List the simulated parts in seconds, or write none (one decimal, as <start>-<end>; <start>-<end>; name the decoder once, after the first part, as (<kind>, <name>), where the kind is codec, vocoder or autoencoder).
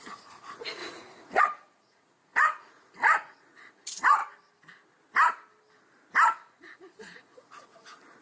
0.0-4.2 (vocoder, Vocos); 6.5-8.2